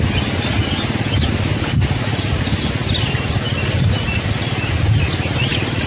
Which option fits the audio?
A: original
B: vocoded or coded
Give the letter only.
A